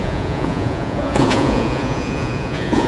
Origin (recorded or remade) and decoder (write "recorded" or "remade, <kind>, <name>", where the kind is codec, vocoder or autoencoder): remade, vocoder, Vocos